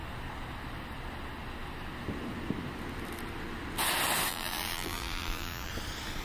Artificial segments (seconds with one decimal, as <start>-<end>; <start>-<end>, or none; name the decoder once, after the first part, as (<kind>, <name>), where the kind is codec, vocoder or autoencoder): 4.3-5.7 (vocoder, BigVGAN v2)